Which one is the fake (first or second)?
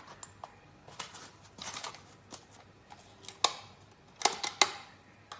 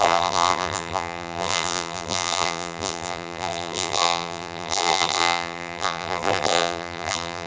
second